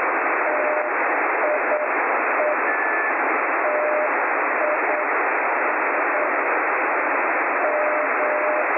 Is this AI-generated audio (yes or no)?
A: no